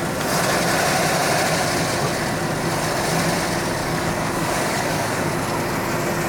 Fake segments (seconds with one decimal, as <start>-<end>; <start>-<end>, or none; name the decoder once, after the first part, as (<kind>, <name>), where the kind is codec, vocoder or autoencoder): 3.8-5.3 (codec, DAC)